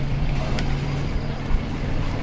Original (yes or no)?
no